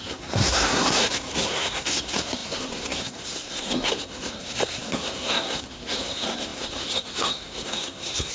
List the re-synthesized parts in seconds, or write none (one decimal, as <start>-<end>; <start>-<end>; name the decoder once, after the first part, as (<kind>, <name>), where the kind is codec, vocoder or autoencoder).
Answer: 0.0-8.3 (codec, SNAC)